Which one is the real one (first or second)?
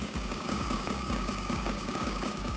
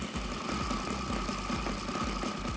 second